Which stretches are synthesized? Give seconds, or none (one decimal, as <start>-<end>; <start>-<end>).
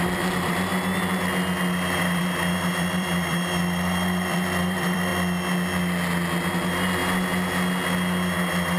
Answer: 0.0-0.7; 2.0-5.1; 6.5-7.0